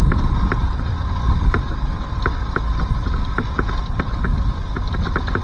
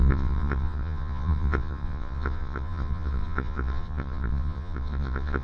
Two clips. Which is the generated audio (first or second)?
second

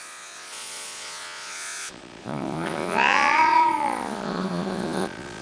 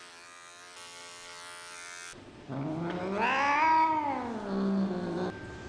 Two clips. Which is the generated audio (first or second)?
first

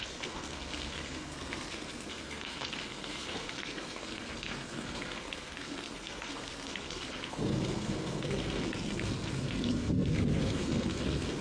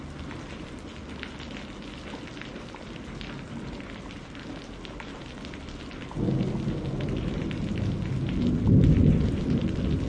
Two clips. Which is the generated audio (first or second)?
first